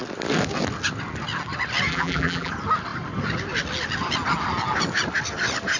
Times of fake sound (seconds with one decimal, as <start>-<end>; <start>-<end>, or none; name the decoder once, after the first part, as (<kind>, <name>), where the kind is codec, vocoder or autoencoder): 1.9-2.5 (vocoder, BigVGAN v2)